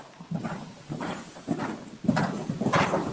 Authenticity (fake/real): real